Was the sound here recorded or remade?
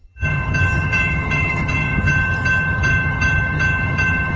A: remade